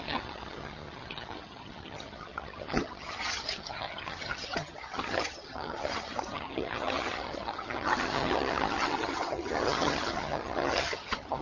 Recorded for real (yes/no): no